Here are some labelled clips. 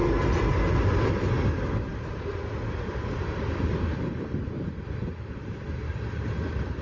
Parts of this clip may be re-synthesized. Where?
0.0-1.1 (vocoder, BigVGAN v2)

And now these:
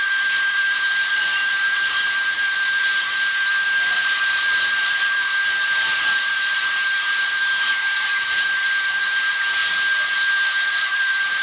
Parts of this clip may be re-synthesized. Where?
0.0-9.6 (vocoder, BigVGAN v2); 10.3-11.4

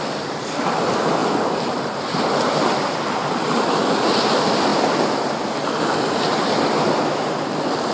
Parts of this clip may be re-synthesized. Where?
0.0-7.9 (vocoder, BigVGAN v2)